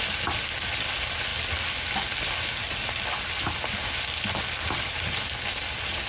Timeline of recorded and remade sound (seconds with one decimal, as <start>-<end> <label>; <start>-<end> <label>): 0.0-6.1 recorded